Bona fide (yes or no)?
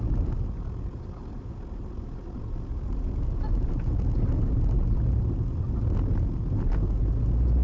yes